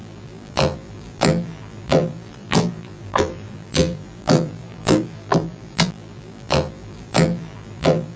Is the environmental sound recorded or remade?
remade